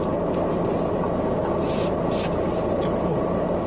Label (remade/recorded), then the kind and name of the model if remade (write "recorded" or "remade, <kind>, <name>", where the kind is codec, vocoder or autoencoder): recorded